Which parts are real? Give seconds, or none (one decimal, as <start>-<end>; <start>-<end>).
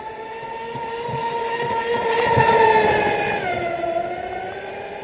0.0-5.0